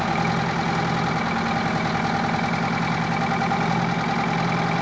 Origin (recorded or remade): recorded